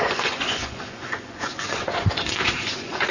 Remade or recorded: remade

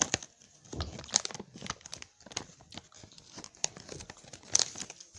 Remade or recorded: recorded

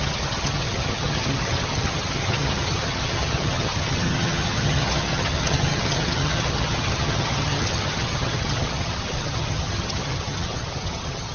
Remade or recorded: remade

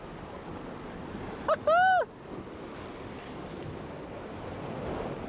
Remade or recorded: recorded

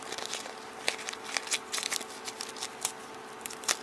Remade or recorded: recorded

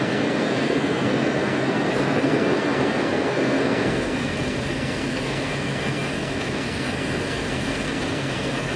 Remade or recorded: remade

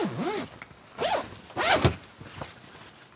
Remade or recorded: recorded